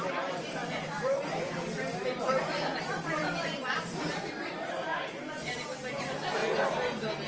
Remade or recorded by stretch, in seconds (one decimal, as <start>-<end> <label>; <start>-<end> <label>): 0.0-6.4 remade; 6.4-7.3 recorded